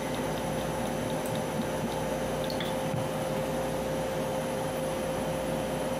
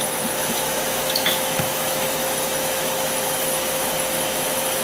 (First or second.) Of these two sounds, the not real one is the second